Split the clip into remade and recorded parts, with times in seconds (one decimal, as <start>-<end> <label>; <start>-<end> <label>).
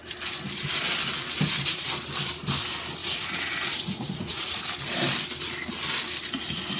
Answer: 0.0-3.0 recorded; 3.0-4.6 remade; 4.6-6.8 recorded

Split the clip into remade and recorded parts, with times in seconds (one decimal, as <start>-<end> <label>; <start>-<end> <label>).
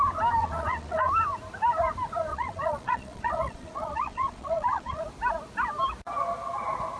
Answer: 0.0-0.4 recorded; 0.4-1.1 remade; 1.1-2.3 recorded; 2.3-5.0 remade; 5.0-7.0 recorded